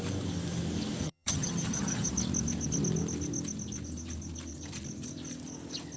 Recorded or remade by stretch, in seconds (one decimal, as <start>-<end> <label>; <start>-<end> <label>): 0.0-1.0 recorded; 1.0-2.1 remade; 2.1-6.0 recorded